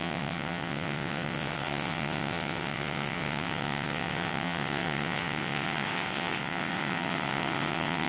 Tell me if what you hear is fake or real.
fake